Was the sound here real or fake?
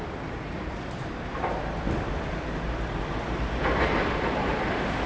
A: real